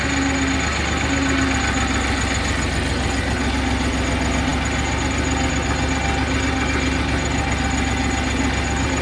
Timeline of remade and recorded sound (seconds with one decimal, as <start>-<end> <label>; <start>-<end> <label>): 0.0-9.0 recorded

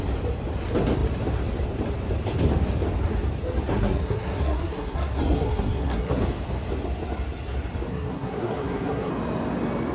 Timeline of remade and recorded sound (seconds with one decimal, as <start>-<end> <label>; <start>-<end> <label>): 0.0-3.7 recorded; 3.7-6.2 remade; 6.2-7.9 recorded; 7.9-9.1 remade; 9.1-9.9 recorded

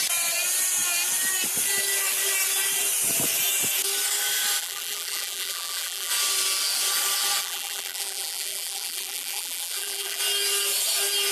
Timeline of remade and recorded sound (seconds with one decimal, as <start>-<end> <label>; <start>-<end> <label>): 0.0-4.6 recorded; 4.6-6.1 remade; 6.1-7.4 recorded; 7.4-10.2 remade; 10.2-11.3 recorded

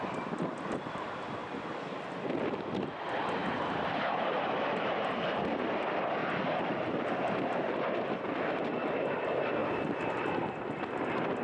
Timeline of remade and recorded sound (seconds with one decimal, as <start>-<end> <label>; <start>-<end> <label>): 0.0-3.4 recorded; 3.4-5.4 remade; 5.4-6.2 recorded; 6.2-7.0 remade; 7.0-9.6 recorded; 9.6-10.2 remade; 10.2-11.4 recorded

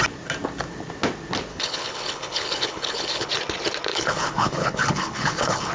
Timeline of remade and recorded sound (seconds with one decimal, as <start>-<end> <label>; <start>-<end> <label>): 0.0-1.5 recorded; 1.5-3.3 remade; 3.3-3.9 recorded; 3.9-5.7 remade

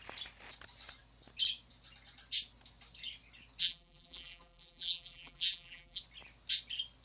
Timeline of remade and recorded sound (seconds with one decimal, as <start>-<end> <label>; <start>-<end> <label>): 0.0-3.6 recorded; 3.6-6.0 remade; 6.0-7.0 recorded

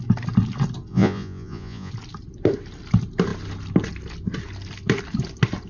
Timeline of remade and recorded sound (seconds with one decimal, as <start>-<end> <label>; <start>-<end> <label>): 0.0-0.9 recorded; 0.9-1.9 remade; 1.9-5.7 recorded